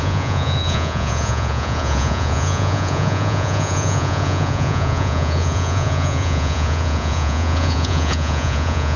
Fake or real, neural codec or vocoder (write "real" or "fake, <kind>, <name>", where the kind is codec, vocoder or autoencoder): fake, vocoder, Vocos